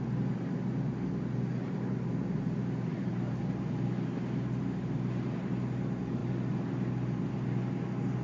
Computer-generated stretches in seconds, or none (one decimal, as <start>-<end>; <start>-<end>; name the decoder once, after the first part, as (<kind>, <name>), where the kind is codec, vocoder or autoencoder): 2.9-3.4 (vocoder, BigVGAN v2)